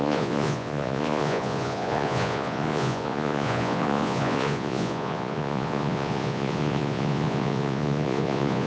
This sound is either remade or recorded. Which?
remade